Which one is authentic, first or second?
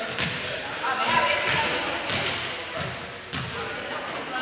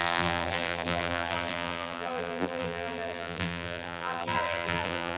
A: first